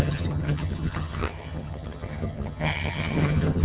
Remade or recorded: remade